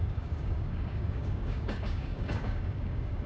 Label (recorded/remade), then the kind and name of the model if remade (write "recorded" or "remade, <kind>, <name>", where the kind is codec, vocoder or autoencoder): remade, codec, DAC